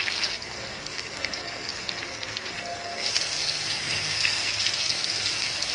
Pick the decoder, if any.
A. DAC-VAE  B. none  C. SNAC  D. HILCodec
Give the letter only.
C